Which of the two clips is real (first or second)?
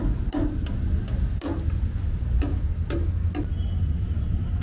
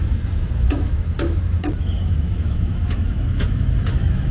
first